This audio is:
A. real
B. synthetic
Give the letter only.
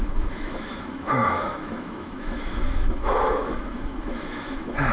B